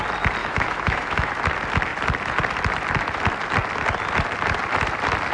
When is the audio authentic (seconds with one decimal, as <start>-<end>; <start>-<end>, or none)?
0.0-0.4; 1.3-5.3

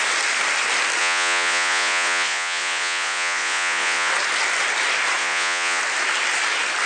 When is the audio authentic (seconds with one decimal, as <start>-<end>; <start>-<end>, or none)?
0.0-1.0; 4.1-5.2; 5.8-6.9